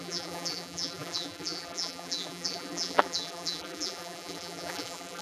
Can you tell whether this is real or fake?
fake